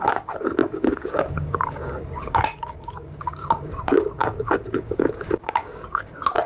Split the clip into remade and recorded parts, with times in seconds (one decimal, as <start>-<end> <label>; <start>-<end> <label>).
0.0-6.5 remade